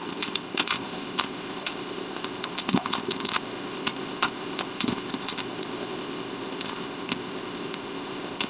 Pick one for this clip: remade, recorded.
remade